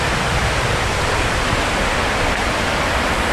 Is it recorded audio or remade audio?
recorded